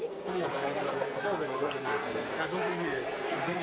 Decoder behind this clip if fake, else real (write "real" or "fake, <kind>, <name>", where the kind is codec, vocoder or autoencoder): fake, codec, SNAC